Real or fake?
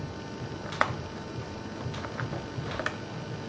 real